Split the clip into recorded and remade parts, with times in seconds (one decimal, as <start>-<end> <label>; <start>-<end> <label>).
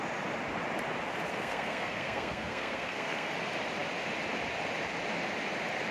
0.0-1.3 recorded; 1.3-3.3 remade; 3.3-5.9 recorded